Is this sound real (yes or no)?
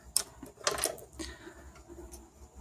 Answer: yes